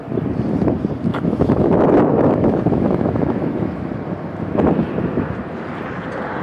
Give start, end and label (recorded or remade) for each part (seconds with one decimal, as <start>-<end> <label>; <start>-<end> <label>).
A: 0.0-1.1 recorded; 1.1-3.9 remade; 3.9-6.4 recorded